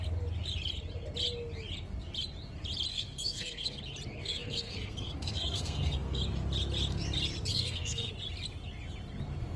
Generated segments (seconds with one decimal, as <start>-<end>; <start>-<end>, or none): 2.9-3.8; 4.2-6.2; 7.5-8.1